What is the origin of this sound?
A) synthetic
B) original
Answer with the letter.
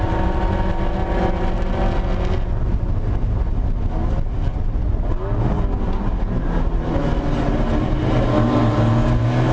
B